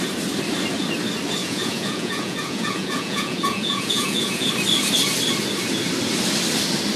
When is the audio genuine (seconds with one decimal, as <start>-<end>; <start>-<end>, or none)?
0.0-1.4; 4.5-7.0